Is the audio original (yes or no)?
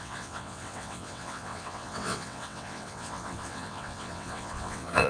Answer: no